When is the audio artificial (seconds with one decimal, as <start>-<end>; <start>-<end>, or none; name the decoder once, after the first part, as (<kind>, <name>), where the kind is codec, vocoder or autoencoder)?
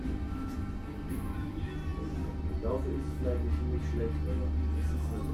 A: none